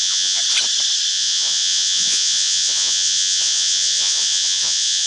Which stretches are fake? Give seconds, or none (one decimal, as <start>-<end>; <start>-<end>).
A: 0.0-0.4; 1.1-5.1